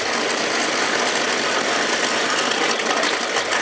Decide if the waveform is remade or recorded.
recorded